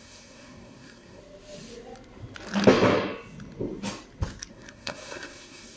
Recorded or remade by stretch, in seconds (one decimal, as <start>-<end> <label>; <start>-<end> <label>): 0.0-1.2 remade; 1.2-4.5 recorded; 4.5-5.8 remade